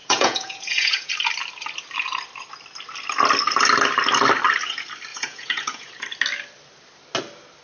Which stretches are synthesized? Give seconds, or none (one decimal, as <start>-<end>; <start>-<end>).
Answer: 0.0-1.1; 5.1-5.9